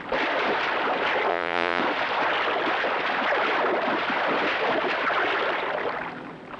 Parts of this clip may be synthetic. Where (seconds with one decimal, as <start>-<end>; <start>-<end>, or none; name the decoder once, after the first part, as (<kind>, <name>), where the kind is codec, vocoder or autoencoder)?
1.3-1.8 (vocoder, Vocos)